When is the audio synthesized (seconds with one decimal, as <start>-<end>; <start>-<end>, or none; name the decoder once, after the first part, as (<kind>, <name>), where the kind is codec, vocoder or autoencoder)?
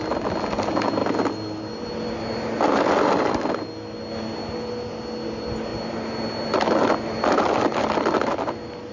none